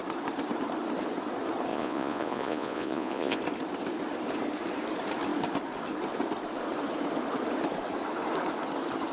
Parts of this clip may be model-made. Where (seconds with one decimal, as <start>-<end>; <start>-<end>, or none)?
1.7-3.4